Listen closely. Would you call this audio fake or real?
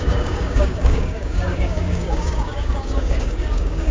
fake